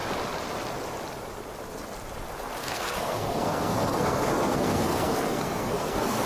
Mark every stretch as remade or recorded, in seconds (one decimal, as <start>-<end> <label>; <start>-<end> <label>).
0.0-2.6 recorded; 2.6-6.3 remade